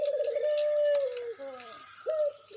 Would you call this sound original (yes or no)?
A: yes